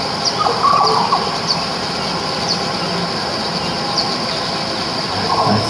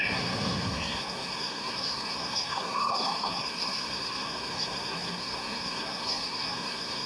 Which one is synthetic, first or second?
second